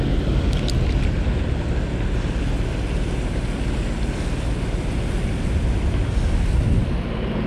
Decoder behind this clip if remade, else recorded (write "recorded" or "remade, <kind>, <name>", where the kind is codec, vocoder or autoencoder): recorded